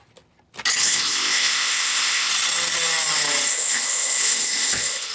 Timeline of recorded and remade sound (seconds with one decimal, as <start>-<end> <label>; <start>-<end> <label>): 0.0-0.8 recorded; 0.8-2.3 remade; 2.3-3.5 recorded; 3.5-5.1 remade